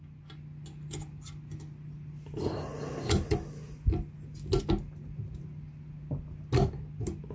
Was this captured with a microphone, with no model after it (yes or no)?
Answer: yes